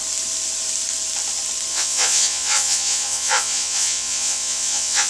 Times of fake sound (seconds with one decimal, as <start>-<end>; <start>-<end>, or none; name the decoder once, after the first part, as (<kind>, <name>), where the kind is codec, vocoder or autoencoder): 1.7-5.1 (vocoder, Vocos)